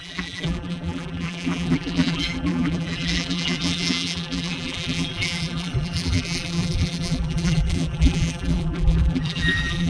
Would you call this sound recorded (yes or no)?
no